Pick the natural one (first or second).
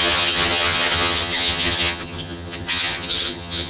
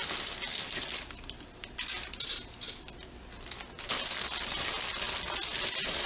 second